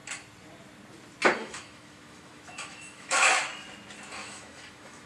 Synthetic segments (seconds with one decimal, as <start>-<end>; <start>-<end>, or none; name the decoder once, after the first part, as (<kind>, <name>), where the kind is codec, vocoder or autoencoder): 1.4-3.4 (autoencoder, DAC-VAE); 4.2-5.1